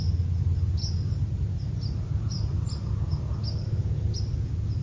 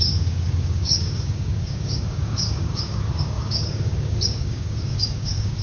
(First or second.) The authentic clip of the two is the first